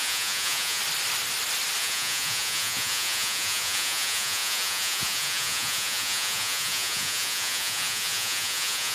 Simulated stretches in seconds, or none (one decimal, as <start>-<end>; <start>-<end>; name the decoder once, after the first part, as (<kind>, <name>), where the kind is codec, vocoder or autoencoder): 0.0-0.8 (vocoder, Vocos); 1.8-8.9